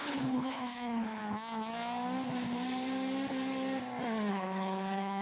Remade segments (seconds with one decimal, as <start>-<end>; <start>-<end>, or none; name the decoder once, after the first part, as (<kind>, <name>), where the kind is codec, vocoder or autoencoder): 0.0-1.2 (codec, HILCodec); 4.3-5.2